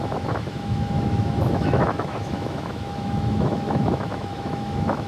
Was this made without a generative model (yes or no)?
no